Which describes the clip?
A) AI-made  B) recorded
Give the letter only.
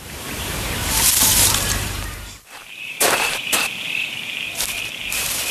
A